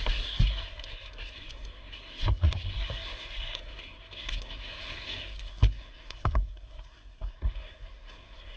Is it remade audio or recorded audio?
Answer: remade